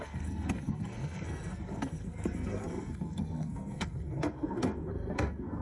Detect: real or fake fake